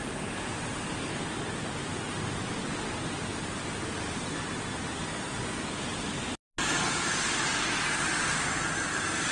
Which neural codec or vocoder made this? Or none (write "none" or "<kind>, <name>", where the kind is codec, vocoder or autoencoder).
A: none